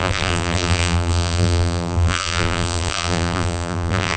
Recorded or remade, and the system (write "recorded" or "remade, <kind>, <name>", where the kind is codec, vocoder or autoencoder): remade, vocoder, BigVGAN v2